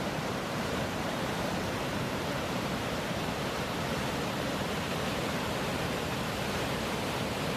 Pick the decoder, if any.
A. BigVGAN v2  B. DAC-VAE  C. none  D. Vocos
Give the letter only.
A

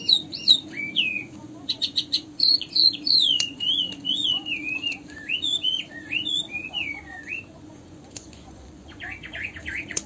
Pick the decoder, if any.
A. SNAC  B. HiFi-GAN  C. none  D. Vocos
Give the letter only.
D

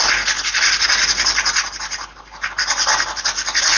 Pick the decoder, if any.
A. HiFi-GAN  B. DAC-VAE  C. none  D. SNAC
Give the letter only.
C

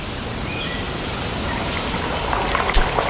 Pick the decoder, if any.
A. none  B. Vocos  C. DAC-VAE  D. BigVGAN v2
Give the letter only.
A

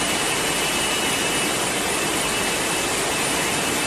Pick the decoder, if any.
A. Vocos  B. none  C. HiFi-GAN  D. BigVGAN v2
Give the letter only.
D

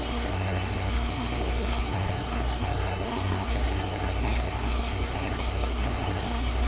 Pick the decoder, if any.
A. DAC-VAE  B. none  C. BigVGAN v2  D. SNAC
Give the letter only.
D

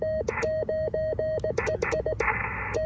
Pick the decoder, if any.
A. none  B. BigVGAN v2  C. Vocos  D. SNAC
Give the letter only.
A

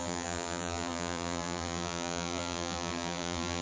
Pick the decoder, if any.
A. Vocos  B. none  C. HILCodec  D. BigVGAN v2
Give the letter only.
D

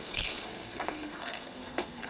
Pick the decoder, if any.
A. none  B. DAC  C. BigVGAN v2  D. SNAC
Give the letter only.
D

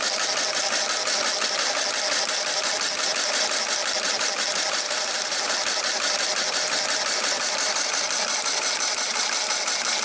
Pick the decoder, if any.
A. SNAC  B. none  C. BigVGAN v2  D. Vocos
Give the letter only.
B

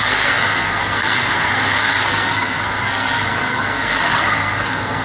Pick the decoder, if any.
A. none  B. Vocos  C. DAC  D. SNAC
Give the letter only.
D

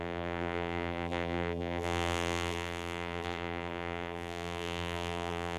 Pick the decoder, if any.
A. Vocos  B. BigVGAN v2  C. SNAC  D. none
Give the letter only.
B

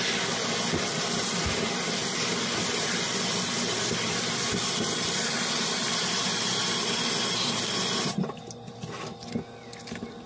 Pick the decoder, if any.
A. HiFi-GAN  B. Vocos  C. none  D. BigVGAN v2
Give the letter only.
C